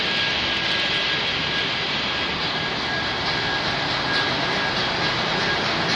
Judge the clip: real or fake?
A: real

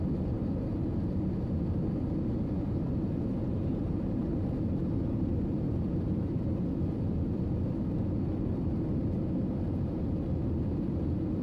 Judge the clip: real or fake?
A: real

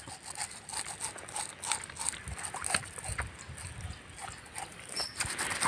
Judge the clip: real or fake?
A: real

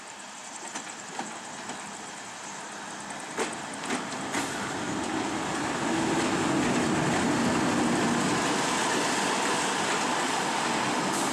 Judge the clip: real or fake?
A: real